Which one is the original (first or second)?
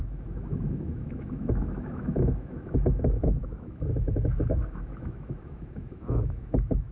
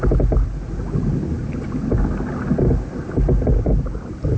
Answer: second